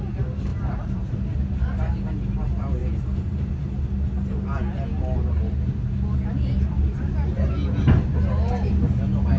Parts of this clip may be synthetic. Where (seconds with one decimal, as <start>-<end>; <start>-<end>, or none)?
0.5-1.3; 2.8-3.5